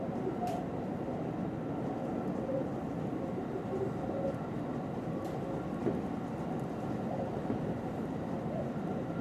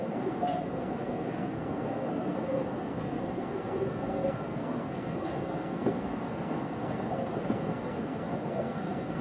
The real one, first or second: first